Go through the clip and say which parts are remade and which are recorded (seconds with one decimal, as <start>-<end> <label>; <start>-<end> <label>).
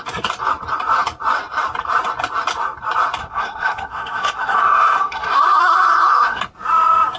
0.0-3.2 recorded; 3.2-6.4 remade; 6.4-7.2 recorded